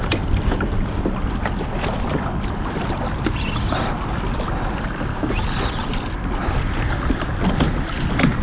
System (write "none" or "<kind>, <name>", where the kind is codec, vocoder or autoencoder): none